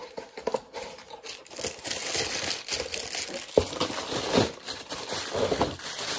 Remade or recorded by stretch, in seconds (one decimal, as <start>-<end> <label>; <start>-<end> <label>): 0.0-3.7 recorded; 3.7-6.2 remade